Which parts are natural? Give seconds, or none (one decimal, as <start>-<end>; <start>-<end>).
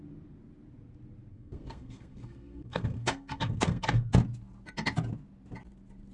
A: 0.0-1.3; 4.1-6.1